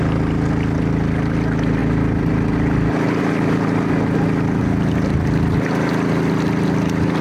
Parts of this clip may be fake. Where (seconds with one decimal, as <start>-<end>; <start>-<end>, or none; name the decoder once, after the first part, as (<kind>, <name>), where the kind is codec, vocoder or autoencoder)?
none